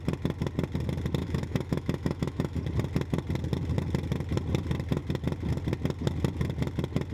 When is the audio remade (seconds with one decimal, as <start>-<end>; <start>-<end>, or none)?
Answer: 1.2-2.6